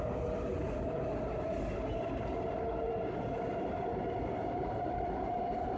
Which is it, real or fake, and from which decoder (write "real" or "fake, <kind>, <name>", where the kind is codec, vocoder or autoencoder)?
real